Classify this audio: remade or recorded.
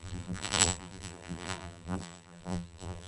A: remade